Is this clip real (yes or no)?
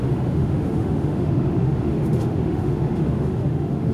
no